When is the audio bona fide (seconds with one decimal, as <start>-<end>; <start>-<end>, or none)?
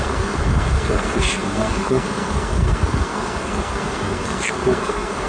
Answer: none